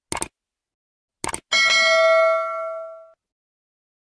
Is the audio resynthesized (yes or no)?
no